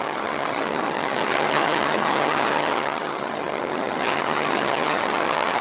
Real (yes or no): no